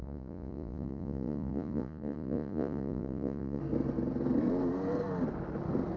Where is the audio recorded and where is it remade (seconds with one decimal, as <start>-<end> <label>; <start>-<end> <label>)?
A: 0.0-3.6 remade; 3.6-6.0 recorded